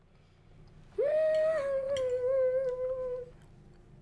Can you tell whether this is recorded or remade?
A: recorded